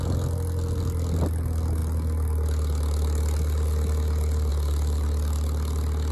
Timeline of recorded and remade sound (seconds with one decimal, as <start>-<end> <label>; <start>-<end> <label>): 0.0-6.1 recorded